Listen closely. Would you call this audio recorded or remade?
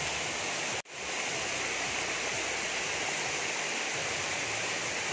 recorded